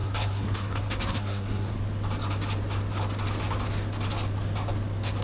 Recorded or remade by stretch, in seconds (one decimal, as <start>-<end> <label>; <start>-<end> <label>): 0.0-1.8 remade; 1.8-5.2 recorded